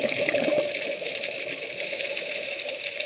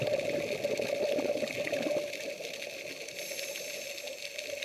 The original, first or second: second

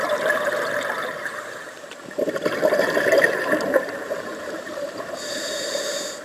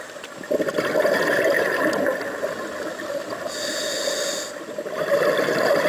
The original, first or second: second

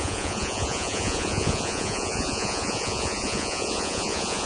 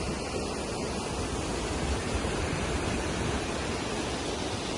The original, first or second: second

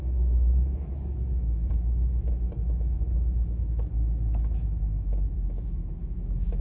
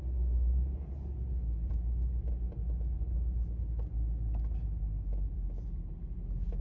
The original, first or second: second